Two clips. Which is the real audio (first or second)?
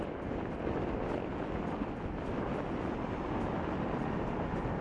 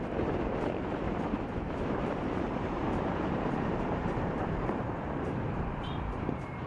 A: first